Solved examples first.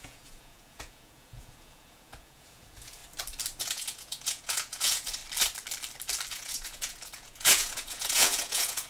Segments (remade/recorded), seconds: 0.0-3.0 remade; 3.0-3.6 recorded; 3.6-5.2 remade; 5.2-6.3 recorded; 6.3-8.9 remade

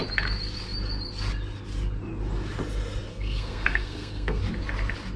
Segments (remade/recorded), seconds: 0.0-3.1 recorded; 3.1-4.4 remade; 4.4-5.2 recorded

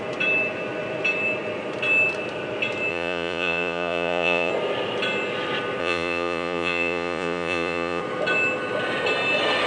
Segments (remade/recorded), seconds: 0.0-2.9 recorded; 2.9-4.5 remade; 4.5-5.8 recorded; 5.8-8.0 remade; 8.0-9.7 recorded

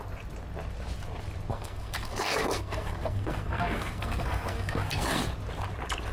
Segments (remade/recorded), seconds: 0.0-1.5 recorded; 1.5-5.2 remade; 5.2-6.1 recorded

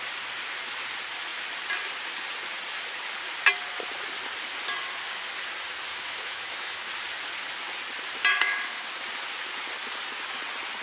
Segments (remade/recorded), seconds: 0.0-5.9 recorded; 5.9-6.9 remade; 6.9-8.3 recorded; 8.3-9.0 remade; 9.0-10.8 recorded